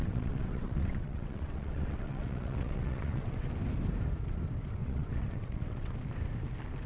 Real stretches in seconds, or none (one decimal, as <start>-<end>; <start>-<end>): 3.5-4.8; 5.9-6.9